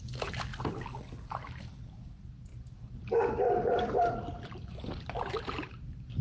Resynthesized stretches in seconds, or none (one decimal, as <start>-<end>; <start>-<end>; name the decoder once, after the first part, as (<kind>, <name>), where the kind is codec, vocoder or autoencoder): 2.5-6.2 (vocoder, BigVGAN v2)